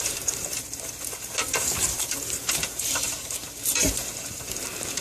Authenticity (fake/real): fake